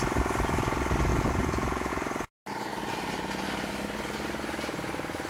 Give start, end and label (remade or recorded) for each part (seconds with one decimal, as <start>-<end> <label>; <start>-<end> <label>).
0.0-1.1 recorded; 1.1-1.9 remade; 1.9-5.3 recorded